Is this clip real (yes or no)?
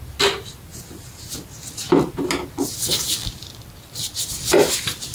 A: yes